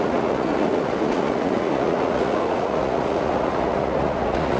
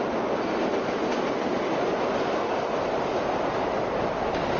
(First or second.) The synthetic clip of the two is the first